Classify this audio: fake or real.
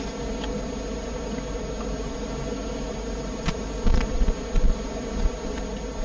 real